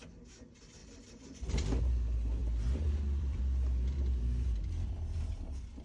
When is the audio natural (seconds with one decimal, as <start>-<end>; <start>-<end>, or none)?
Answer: 0.0-0.8; 1.8-2.4; 3.4-5.8